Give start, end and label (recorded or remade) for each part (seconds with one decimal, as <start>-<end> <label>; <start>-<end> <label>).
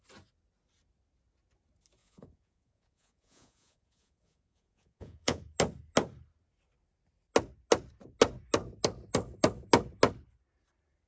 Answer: 0.0-2.0 recorded; 2.0-5.4 remade; 5.4-11.1 recorded